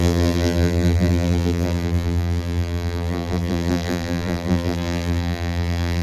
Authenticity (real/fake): fake